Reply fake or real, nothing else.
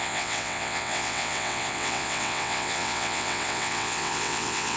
fake